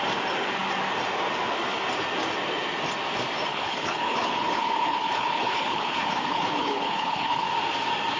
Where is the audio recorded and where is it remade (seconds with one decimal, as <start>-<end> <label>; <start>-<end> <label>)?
0.0-3.5 recorded; 3.5-7.5 remade; 7.5-8.2 recorded